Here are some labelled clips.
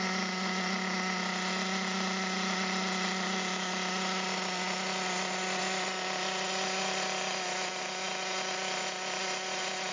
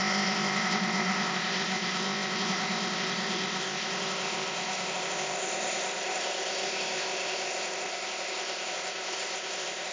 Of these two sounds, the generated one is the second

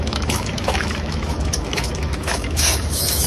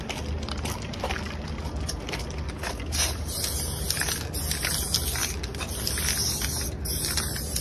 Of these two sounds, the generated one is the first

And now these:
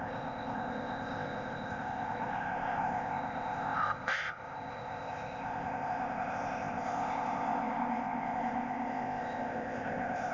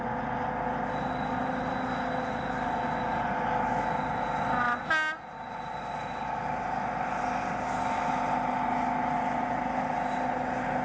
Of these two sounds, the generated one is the first